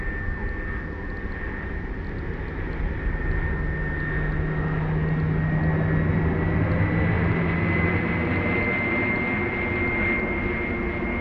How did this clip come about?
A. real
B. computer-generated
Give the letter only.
A